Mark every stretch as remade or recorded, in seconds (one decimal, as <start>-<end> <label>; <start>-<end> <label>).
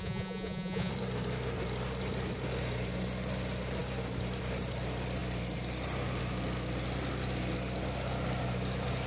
0.0-0.9 remade; 0.9-9.1 recorded